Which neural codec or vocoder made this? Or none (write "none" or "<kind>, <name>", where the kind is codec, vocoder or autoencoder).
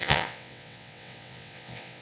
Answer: vocoder, WaveNeXt